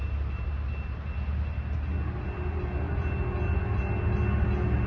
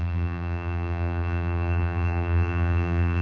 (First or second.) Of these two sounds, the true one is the first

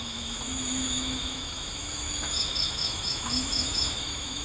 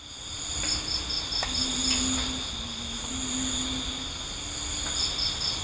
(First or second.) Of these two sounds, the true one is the second